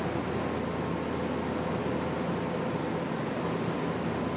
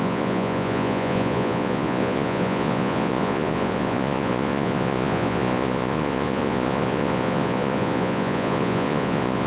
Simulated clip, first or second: second